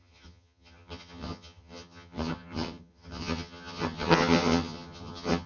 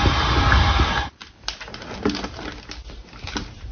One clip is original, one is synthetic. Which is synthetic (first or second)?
first